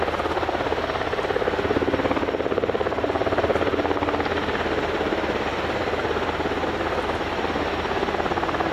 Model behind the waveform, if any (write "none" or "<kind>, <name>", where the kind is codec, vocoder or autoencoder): none